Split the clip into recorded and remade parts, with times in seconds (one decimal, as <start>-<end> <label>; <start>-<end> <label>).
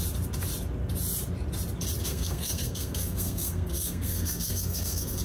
0.0-2.1 recorded; 2.1-5.2 remade